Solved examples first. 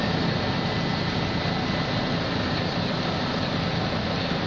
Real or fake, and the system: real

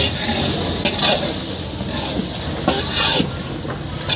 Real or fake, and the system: real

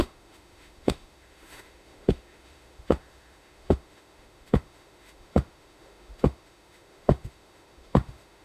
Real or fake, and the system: fake, autoencoder, DAC-VAE